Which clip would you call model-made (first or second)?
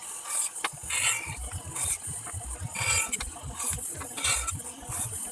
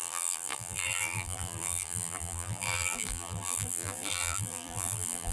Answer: second